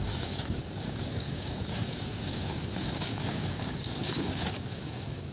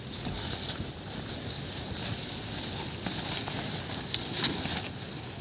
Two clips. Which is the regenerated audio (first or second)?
first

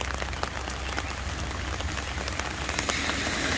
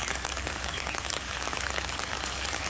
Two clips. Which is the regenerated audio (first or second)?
second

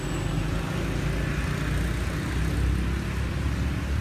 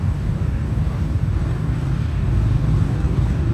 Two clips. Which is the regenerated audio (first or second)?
second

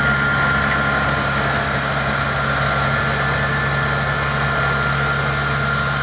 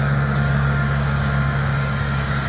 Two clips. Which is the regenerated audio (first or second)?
second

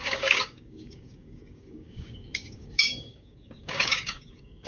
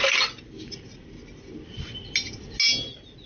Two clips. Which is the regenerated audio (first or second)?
first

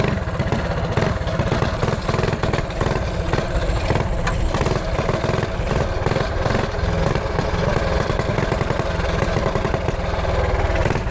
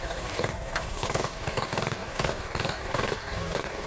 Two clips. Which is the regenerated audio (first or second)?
second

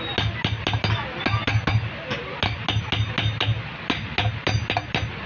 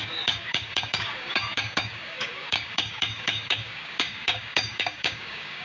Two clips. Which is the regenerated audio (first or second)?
second